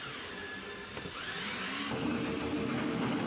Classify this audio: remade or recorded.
recorded